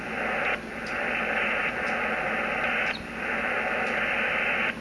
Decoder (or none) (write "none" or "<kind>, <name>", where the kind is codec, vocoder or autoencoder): none